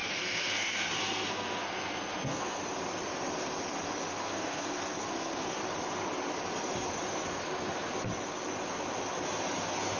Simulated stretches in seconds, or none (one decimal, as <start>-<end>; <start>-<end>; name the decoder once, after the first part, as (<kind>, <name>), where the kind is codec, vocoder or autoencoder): 0.0-2.6 (codec, SNAC); 4.1-5.6